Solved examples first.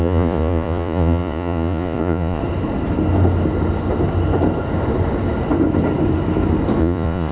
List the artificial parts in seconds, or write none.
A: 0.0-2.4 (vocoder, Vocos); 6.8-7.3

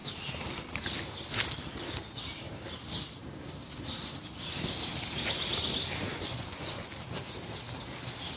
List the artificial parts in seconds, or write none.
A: 6.1-6.9 (vocoder, Vocos)

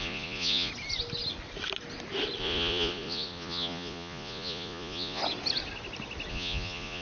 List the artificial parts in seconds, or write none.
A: 0.0-0.7 (vocoder, Vocos); 2.4-5.2; 6.3-7.0

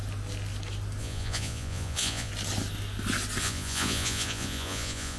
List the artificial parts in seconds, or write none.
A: 1.0-2.3 (vocoder, Vocos); 3.4-5.2

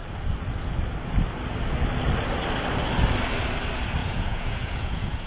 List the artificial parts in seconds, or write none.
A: 4.0-5.3 (vocoder, Vocos)